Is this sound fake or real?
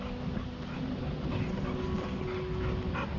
real